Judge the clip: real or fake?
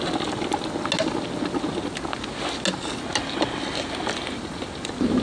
real